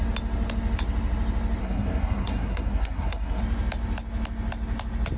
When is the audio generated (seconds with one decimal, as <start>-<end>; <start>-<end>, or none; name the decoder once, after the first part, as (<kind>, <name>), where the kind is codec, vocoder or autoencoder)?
1.6-3.4 (codec, SNAC)